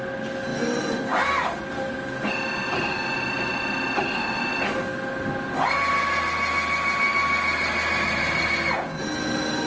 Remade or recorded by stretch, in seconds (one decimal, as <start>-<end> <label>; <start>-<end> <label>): 0.0-9.7 recorded